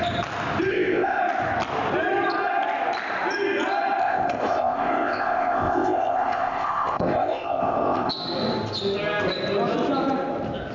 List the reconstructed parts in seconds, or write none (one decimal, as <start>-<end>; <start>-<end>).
0.7-1.2; 4.0-8.1